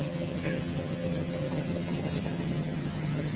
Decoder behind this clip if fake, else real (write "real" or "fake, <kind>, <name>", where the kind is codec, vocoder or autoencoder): fake, vocoder, HiFi-GAN